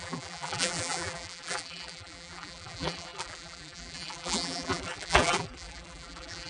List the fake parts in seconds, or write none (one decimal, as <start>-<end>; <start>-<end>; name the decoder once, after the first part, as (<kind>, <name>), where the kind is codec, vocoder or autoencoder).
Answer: 0.0-6.5 (vocoder, BigVGAN v2)